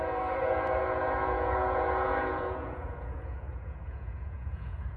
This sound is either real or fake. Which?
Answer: fake